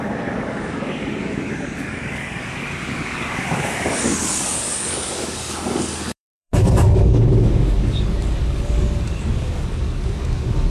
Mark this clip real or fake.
fake